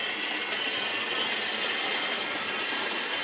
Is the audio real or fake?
real